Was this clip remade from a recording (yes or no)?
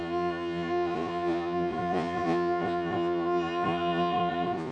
yes